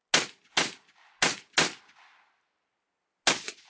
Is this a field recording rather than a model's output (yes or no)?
yes